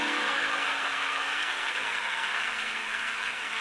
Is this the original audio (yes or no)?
no